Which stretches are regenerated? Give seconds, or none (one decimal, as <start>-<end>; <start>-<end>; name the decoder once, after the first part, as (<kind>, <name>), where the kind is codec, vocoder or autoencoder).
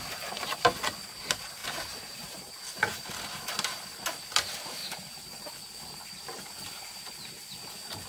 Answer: 1.6-2.5 (vocoder, BigVGAN v2); 4.8-5.5